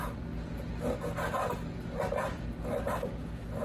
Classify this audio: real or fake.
real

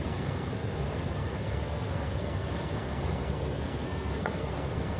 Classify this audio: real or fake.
fake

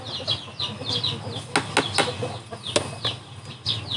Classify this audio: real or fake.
real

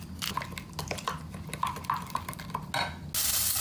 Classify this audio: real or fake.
real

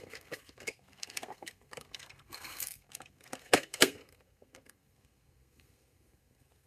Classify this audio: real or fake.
fake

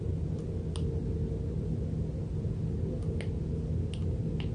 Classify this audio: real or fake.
real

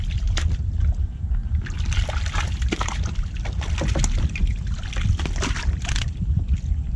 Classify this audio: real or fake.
real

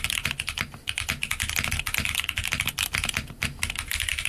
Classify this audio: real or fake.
real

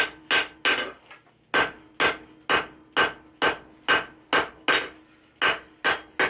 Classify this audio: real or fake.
real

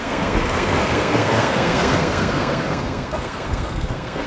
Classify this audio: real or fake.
fake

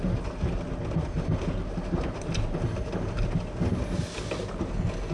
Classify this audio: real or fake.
real